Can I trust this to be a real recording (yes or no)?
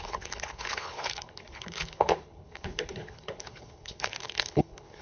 no